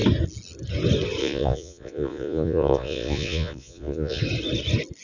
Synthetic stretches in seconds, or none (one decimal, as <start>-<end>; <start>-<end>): 1.2-4.2